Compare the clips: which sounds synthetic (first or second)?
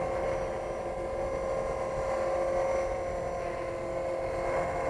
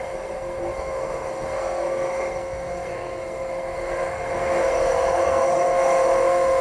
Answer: second